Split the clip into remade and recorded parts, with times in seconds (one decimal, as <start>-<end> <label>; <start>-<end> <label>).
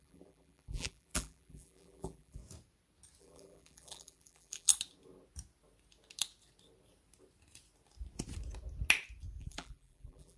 0.0-2.4 remade; 2.4-3.2 recorded; 3.2-4.7 remade; 4.7-9.4 recorded; 9.4-10.4 remade